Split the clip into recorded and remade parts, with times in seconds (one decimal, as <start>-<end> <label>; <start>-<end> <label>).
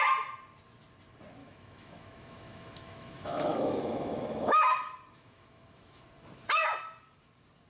0.0-1.4 recorded; 1.4-6.0 remade; 6.0-7.7 recorded